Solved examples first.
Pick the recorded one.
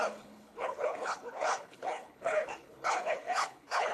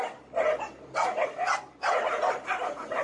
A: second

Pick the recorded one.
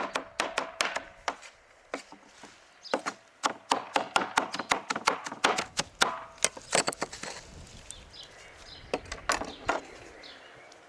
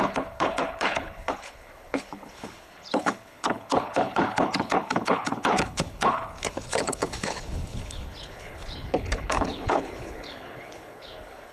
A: first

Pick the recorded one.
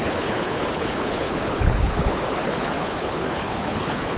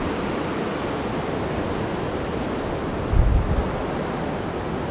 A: second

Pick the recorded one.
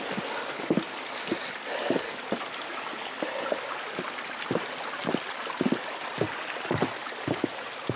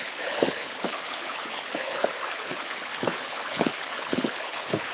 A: first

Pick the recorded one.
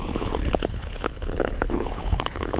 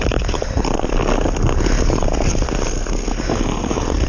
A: second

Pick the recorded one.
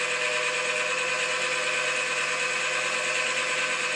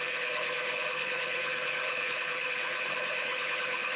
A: first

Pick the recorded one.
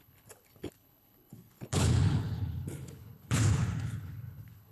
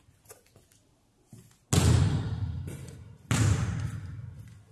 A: second